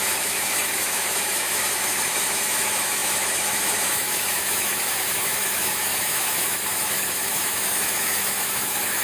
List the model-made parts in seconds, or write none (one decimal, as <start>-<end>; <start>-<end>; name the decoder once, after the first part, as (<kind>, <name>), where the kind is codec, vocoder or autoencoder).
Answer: 0.0-9.0 (autoencoder, DAC-VAE)